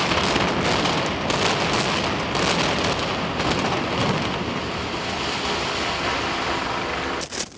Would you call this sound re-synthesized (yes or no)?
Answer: no